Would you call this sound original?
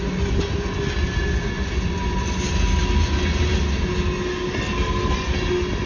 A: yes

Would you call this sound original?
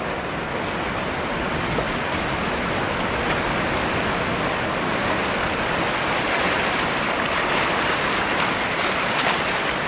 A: yes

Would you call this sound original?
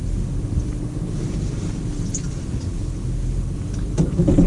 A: yes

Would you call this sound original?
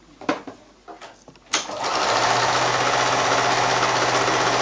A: yes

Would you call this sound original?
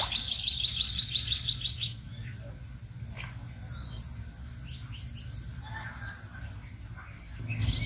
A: yes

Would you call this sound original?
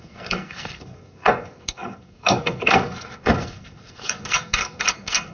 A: no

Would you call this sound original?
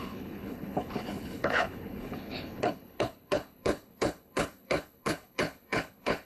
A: no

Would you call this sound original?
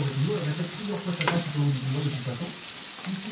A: yes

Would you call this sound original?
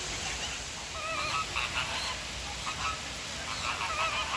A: yes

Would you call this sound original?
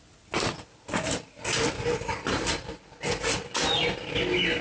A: yes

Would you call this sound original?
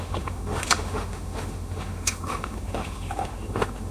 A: no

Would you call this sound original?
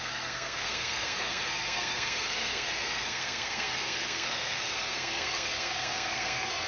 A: no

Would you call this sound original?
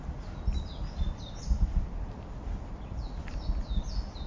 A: yes